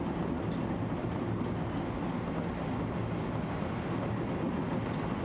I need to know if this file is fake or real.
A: real